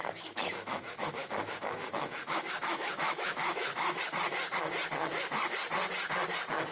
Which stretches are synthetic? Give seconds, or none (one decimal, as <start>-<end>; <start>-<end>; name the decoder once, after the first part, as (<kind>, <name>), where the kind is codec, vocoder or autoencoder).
0.0-4.0 (autoencoder, DAC-VAE)